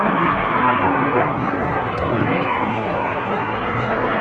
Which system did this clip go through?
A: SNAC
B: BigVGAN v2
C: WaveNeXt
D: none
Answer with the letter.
A